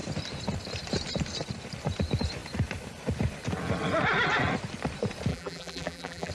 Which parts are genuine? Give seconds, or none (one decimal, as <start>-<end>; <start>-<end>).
0.0-5.3